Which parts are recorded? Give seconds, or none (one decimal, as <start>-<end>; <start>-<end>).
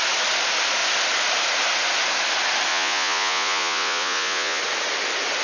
0.0-2.7; 4.6-5.4